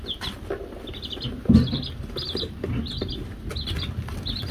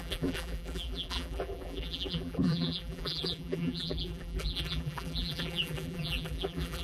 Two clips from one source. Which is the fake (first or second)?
second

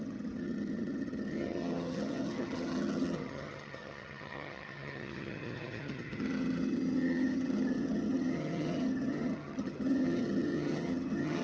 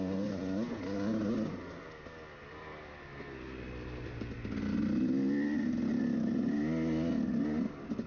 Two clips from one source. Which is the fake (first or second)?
first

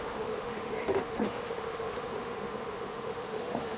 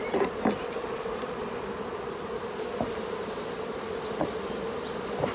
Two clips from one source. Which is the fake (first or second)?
first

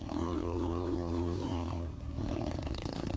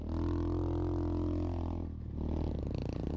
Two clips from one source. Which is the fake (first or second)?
first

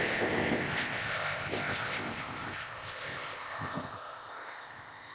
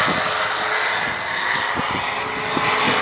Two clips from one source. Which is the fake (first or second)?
first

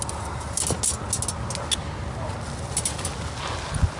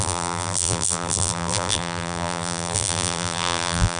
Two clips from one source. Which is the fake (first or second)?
second